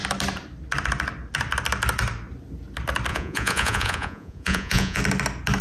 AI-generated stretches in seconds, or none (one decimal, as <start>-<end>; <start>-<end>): 3.1-5.0